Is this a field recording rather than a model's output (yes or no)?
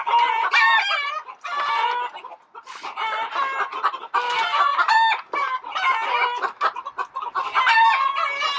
yes